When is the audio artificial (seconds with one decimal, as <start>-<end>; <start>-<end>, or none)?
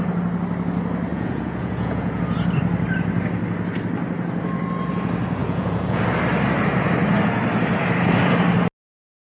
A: 1.1-2.2; 5.4-6.0